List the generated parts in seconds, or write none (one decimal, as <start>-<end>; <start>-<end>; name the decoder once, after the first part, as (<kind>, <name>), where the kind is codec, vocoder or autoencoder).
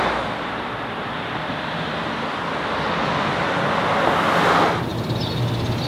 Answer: none